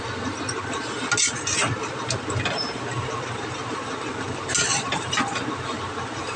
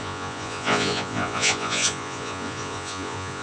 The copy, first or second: second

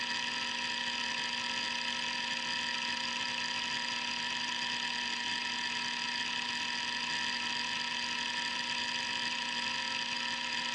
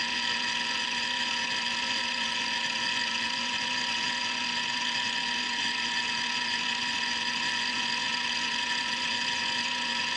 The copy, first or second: second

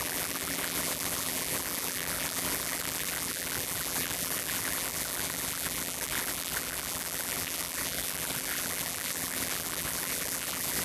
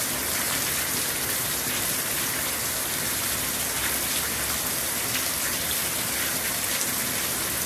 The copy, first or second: first